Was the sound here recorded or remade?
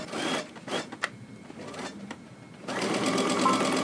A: recorded